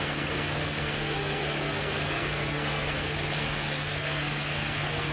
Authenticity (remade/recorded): remade